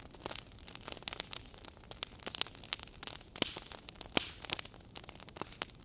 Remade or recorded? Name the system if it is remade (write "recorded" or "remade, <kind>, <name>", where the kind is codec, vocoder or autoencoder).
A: recorded